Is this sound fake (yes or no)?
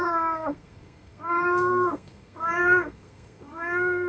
yes